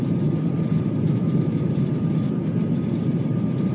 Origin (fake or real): fake